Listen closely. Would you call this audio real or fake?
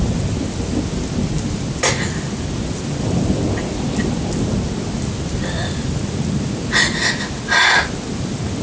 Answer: real